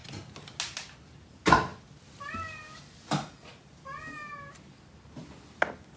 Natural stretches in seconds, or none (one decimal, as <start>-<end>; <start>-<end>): 0.0-6.0